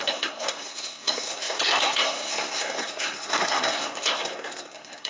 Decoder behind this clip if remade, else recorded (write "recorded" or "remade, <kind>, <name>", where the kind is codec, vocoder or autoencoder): remade, codec, SNAC